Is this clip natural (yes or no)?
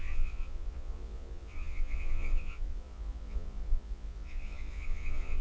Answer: no